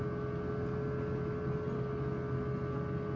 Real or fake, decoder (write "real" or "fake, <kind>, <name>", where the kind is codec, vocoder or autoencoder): real